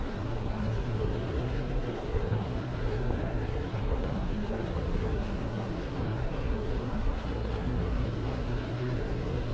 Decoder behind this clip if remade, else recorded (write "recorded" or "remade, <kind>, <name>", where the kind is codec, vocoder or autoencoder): remade, codec, SNAC